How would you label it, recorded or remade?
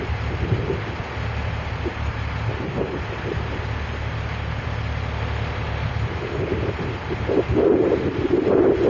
recorded